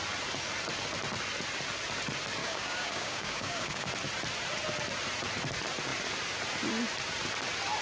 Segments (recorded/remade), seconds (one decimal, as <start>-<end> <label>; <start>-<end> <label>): 0.0-2.4 recorded; 2.4-3.9 remade; 3.9-7.8 recorded